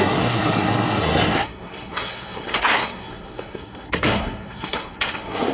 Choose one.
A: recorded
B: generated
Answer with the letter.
B